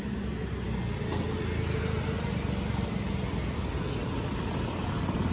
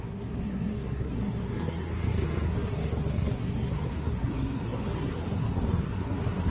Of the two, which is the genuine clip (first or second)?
first